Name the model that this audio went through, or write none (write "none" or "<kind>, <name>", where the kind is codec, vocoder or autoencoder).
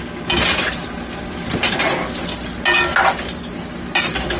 none